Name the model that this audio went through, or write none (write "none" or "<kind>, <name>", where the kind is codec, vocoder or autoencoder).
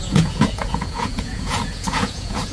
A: vocoder, Vocos